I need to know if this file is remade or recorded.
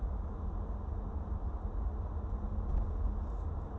recorded